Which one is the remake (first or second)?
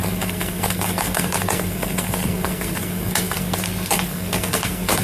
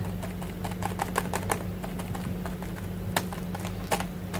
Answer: first